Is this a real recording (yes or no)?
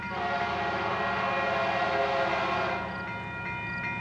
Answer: yes